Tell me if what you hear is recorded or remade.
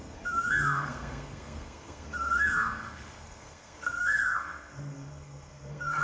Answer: remade